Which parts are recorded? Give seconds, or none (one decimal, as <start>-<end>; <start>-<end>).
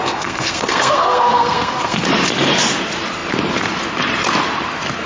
2.0-5.1